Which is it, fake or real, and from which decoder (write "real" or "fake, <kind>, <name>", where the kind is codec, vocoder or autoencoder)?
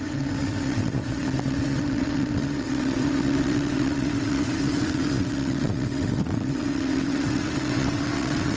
fake, vocoder, WaveNeXt